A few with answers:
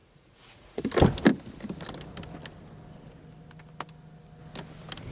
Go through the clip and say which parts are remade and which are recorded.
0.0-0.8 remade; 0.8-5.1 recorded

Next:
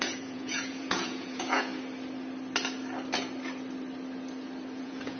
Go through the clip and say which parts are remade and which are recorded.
0.0-1.7 remade; 1.7-4.8 recorded; 4.8-5.2 remade

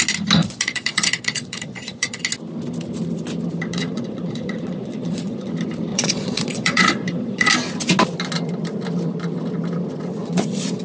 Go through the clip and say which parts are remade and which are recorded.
0.0-0.4 recorded; 0.4-2.2 remade; 2.2-3.7 recorded; 3.7-5.5 remade; 5.5-5.9 recorded; 5.9-7.5 remade; 7.5-10.2 recorded; 10.2-10.8 remade

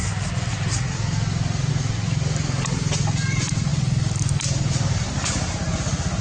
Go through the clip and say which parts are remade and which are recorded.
0.0-6.2 recorded

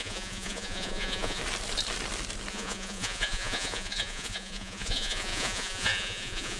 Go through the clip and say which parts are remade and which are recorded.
0.0-1.4 remade; 1.4-2.5 recorded; 2.5-6.6 remade

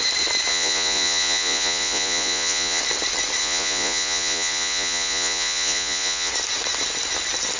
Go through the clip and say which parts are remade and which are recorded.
0.0-0.5 recorded; 0.5-2.8 remade; 2.8-3.4 recorded; 3.4-6.3 remade; 6.3-7.6 recorded

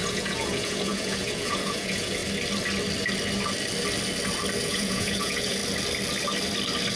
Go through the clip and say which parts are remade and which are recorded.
0.0-2.2 remade; 2.2-4.6 recorded; 4.6-5.6 remade; 5.6-7.0 recorded